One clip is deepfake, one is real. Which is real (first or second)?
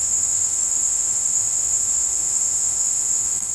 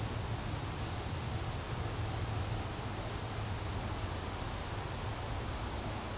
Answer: second